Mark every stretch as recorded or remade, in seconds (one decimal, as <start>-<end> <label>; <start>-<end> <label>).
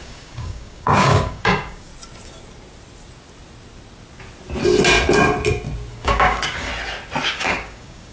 0.0-1.9 remade; 1.9-5.9 recorded; 5.9-6.7 remade; 6.7-7.3 recorded; 7.3-8.1 remade